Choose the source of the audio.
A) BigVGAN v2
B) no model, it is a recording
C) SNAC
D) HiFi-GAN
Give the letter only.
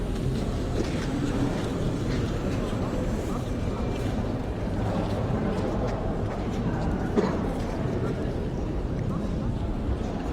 A